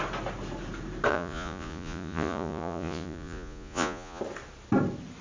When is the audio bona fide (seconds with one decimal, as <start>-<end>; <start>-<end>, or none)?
0.0-1.1; 4.2-5.2